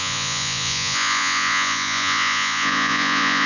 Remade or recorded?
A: remade